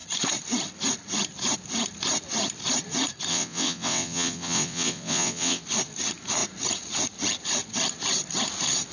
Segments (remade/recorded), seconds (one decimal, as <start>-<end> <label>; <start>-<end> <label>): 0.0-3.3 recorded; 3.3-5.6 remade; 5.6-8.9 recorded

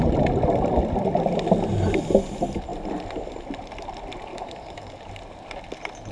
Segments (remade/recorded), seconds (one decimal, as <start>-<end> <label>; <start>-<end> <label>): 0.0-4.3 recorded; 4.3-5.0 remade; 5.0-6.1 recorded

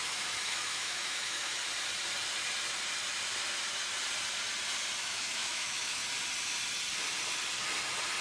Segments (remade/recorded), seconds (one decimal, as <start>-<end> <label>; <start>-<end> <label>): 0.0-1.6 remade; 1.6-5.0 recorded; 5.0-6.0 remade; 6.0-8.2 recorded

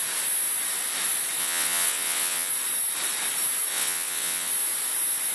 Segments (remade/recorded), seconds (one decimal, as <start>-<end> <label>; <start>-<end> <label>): 0.0-1.4 recorded; 1.4-2.5 remade; 2.5-3.7 recorded; 3.7-4.5 remade; 4.5-5.3 recorded